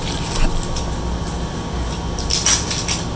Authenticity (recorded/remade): recorded